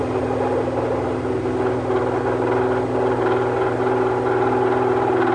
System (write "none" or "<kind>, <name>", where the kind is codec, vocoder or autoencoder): none